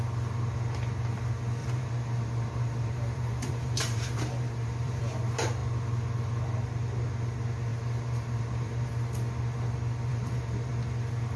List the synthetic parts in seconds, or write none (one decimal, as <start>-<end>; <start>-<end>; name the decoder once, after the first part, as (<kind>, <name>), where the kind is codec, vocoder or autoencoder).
1.6-5.0 (vocoder, BigVGAN v2); 7.7-8.9; 10.1-10.7